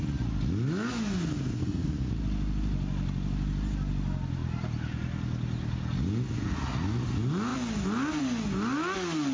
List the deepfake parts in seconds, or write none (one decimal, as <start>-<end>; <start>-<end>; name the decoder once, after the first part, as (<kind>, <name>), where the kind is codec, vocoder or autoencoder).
1.6-2.1 (codec, SNAC)